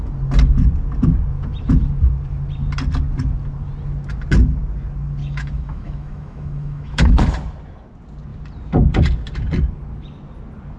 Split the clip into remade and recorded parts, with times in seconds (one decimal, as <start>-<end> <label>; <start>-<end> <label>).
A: 0.0-5.2 recorded; 5.2-7.2 remade; 7.2-10.8 recorded